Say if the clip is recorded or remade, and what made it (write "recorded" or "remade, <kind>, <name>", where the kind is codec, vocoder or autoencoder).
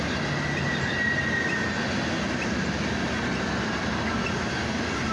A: recorded